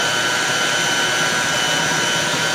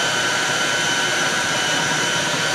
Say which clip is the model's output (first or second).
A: second